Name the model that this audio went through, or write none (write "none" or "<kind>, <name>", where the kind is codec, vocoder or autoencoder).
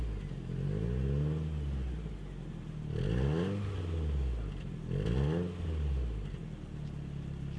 none